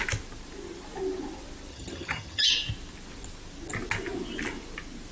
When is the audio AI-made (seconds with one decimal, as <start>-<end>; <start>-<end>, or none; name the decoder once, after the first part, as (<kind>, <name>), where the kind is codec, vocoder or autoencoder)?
1.7-2.5 (vocoder, HiFi-GAN)